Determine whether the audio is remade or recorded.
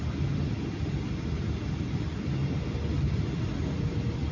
recorded